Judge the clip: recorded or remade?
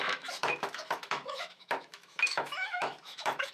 remade